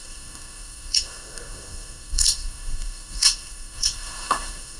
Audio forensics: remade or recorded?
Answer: remade